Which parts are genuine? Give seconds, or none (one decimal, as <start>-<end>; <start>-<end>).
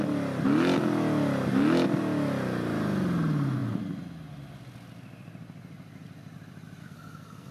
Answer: 0.0-6.8